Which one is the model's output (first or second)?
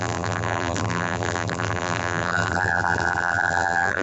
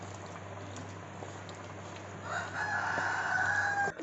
first